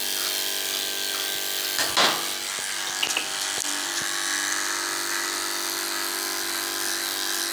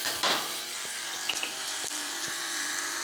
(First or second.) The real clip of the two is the first